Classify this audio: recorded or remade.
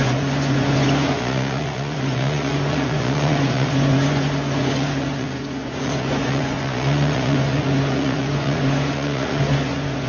remade